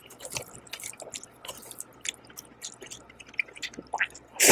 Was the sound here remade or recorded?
recorded